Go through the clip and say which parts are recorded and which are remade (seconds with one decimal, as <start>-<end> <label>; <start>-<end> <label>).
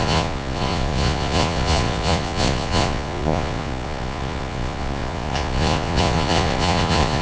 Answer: 0.0-7.2 remade